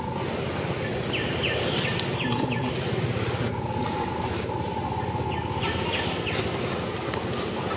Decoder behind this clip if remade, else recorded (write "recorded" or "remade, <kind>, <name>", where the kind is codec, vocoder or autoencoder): recorded